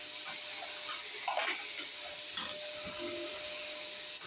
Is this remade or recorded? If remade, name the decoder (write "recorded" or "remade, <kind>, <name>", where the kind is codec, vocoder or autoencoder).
recorded